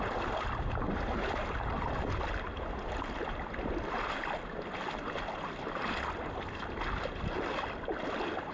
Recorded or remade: recorded